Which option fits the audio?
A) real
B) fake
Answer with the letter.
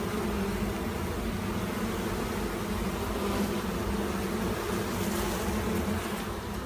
A